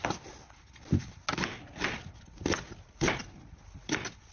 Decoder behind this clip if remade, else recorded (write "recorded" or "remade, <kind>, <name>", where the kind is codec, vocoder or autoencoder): recorded